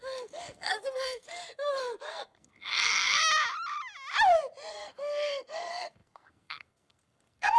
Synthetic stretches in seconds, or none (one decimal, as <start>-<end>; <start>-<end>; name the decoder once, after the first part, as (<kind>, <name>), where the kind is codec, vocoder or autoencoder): 0.0-3.2 (codec, SNAC); 4.7-7.6